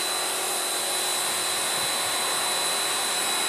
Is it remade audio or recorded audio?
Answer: recorded